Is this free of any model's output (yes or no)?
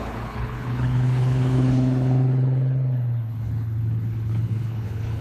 no